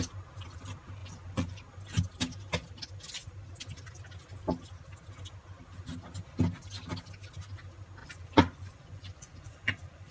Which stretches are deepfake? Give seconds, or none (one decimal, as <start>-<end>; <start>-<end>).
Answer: 1.0-1.6; 8.0-10.1